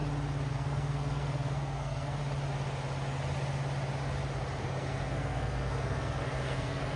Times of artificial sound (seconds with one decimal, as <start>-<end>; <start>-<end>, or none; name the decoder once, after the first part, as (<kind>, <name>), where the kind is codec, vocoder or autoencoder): 0.5-2.2 (codec, SNAC); 4.6-7.0